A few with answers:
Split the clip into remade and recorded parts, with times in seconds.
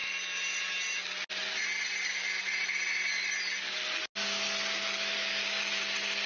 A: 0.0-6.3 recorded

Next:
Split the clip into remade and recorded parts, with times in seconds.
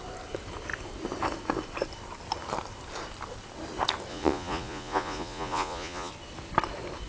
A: 0.0-4.1 recorded; 4.1-6.1 remade; 6.1-7.1 recorded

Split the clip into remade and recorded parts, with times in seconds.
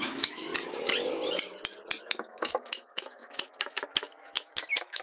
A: 0.0-0.5 remade; 0.5-2.0 recorded; 2.0-5.0 remade